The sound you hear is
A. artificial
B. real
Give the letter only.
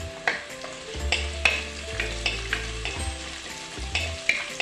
B